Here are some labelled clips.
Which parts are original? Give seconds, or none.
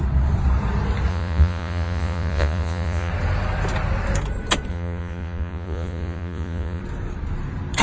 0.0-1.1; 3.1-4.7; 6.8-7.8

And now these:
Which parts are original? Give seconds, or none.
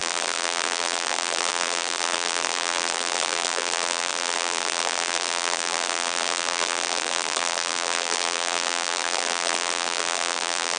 none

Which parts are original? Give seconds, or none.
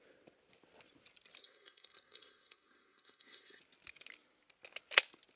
0.0-1.4; 3.6-5.4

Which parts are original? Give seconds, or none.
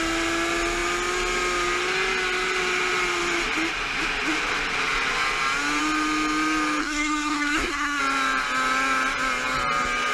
0.0-6.8; 8.0-10.1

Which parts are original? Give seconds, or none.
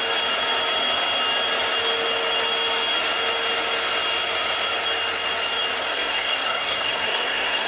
0.0-5.9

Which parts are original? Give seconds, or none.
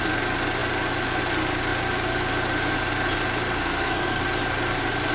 0.0-3.6; 4.2-5.1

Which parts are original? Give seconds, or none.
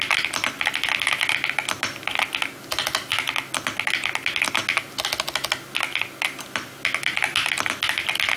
0.0-8.4